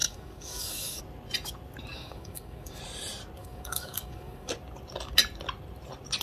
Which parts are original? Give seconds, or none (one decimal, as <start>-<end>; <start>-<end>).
1.0-1.9; 2.8-3.4; 4.5-6.2